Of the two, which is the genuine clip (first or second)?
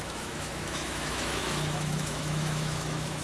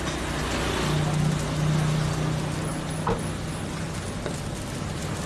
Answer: second